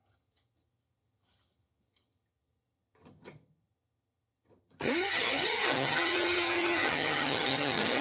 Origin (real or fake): fake